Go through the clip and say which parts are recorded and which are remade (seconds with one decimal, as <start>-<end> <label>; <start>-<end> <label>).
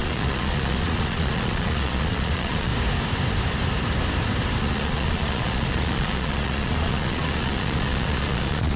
0.0-2.7 remade; 2.7-4.6 recorded; 4.6-8.8 remade